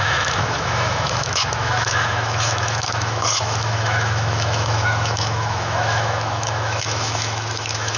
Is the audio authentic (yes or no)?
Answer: no